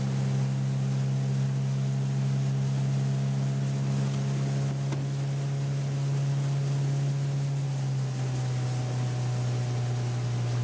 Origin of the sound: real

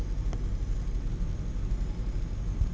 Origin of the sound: real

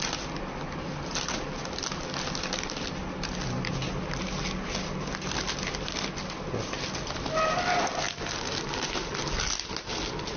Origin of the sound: real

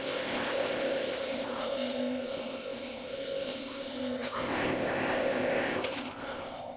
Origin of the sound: fake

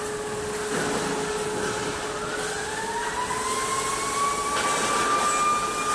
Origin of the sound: real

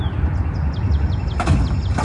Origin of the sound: real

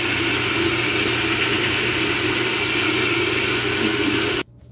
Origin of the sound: real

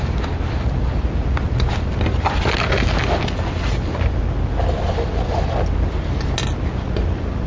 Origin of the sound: real